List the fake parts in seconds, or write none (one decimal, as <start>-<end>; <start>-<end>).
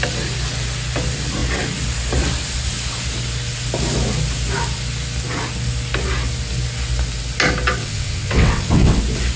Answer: 7.8-9.0